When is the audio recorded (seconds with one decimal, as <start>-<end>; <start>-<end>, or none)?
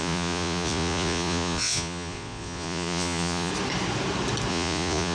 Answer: 3.5-4.5